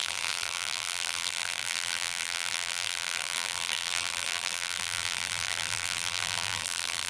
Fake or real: fake